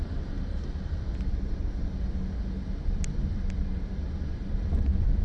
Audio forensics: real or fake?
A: fake